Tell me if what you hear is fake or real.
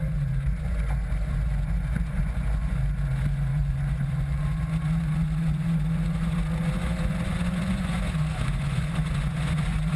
fake